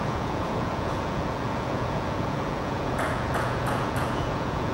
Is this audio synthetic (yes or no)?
yes